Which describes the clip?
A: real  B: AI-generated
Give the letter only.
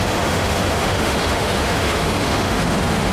B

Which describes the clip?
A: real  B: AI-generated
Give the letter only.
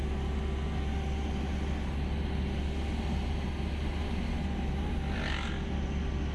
A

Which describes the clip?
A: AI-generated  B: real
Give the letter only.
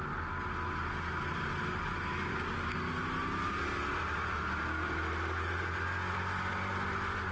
B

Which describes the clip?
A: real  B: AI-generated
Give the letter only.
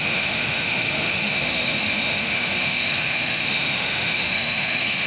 B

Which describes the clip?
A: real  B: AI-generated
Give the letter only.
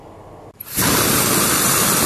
A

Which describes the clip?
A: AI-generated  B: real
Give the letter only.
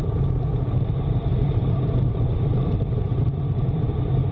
A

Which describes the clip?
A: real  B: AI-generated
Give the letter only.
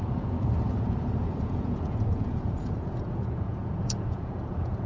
B